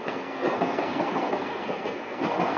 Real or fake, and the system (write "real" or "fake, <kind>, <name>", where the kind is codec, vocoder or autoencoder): fake, codec, SNAC